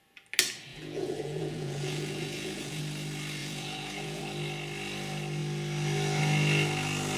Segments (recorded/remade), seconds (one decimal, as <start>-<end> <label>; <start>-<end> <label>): 0.0-0.7 recorded; 0.7-2.8 remade; 2.8-3.4 recorded; 3.4-4.2 remade; 4.2-7.2 recorded